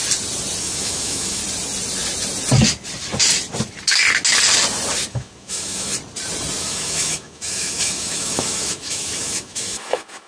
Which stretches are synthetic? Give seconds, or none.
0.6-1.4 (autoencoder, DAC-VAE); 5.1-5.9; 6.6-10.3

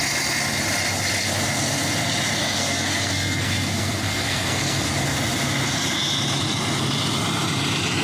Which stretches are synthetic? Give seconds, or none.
2.4-4.9 (codec, SNAC)

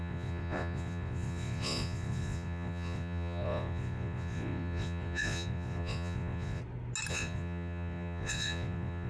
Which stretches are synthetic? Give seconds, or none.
0.0-6.6 (vocoder, Vocos); 7.1-9.1

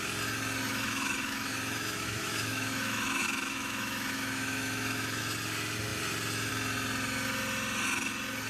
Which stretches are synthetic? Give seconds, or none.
0.7-5.2 (autoencoder, DAC-VAE)

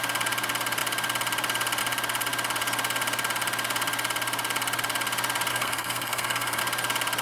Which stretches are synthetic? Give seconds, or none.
5.5-6.6 (codec, SNAC)

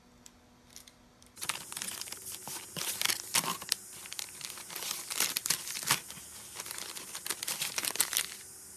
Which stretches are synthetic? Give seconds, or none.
none

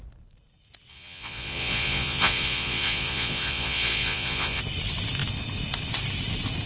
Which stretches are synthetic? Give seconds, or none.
0.9-4.6 (vocoder, Vocos)

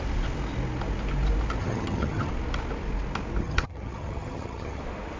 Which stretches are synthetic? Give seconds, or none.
1.6-2.3 (vocoder, HiFi-GAN); 3.4-4.8